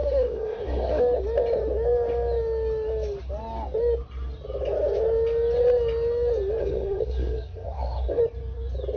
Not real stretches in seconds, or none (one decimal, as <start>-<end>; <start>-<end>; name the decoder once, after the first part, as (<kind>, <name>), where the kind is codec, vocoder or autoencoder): 0.0-1.0 (codec, SNAC); 6.6-8.2